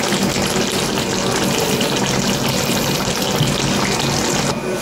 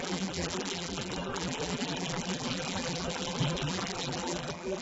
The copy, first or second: second